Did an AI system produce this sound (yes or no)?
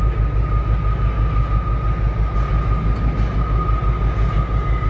no